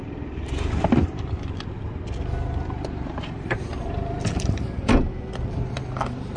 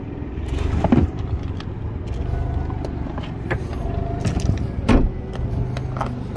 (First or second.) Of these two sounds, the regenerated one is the first